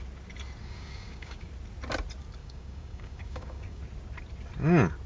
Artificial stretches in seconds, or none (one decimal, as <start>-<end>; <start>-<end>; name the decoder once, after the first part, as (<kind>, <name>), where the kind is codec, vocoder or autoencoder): 0.6-1.5 (codec, DAC); 2.4-3.8